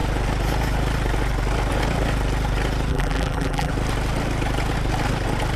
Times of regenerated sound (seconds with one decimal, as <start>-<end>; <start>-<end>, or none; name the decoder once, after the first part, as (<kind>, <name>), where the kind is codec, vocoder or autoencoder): 2.9-3.7 (vocoder, BigVGAN v2)

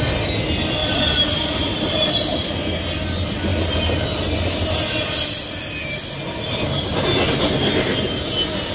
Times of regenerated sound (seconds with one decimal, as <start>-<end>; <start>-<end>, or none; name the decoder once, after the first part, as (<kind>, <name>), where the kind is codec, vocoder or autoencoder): 0.8-2.4 (vocoder, BigVGAN v2)

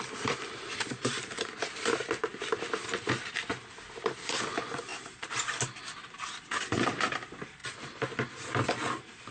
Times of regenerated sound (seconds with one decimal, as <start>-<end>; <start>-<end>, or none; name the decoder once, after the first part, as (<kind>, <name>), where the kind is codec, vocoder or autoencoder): 0.0-2.3 (vocoder, BigVGAN v2); 3.5-4.9; 5.8-7.6

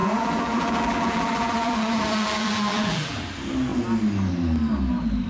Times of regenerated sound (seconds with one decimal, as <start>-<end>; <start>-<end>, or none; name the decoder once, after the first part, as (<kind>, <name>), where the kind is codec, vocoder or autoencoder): 0.0-3.2 (vocoder, BigVGAN v2)

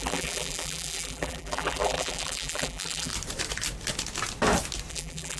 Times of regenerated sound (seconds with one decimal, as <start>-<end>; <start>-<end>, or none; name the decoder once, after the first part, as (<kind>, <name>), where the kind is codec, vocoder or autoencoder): 0.0-3.1 (vocoder, BigVGAN v2); 4.9-5.4

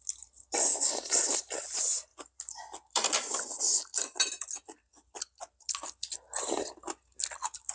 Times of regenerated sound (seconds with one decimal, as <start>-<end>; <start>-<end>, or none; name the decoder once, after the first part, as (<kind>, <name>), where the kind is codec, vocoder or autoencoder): 1.0-1.6 (vocoder, BigVGAN v2); 2.1-3.1

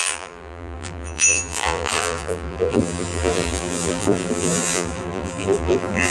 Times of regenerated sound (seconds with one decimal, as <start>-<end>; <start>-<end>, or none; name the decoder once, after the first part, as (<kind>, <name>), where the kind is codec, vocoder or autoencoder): 0.0-6.1 (vocoder, BigVGAN v2)